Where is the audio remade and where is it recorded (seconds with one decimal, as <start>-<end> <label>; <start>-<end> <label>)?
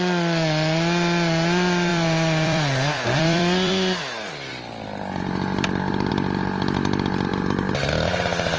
0.0-1.9 recorded; 1.9-4.0 remade; 4.0-4.5 recorded; 4.5-6.1 remade; 6.1-8.6 recorded